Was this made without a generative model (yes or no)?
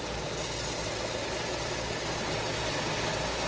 yes